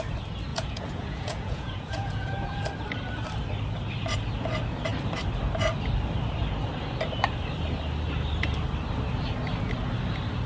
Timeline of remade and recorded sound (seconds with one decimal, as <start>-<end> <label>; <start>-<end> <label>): 0.0-0.5 recorded; 0.5-2.6 remade; 2.6-10.5 recorded